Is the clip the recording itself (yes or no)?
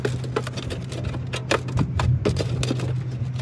yes